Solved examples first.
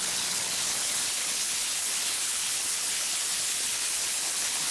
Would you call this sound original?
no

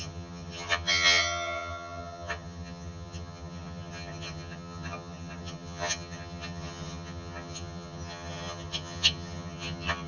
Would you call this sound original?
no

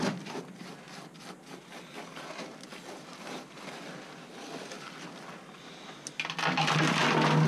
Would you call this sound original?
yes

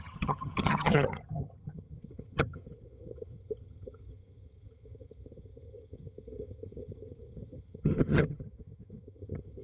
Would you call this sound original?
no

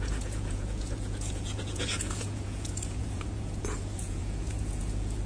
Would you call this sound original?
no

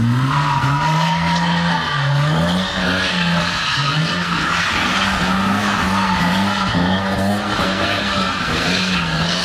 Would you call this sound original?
no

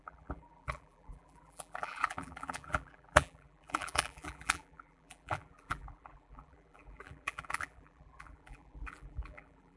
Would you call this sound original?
no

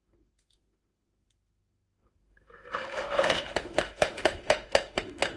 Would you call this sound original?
no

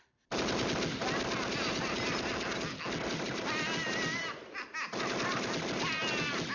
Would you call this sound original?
yes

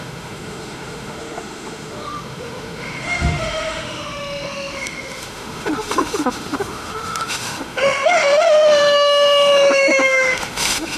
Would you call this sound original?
no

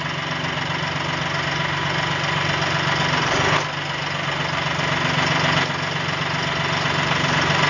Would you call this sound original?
yes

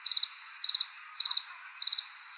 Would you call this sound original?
yes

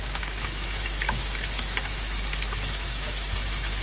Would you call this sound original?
no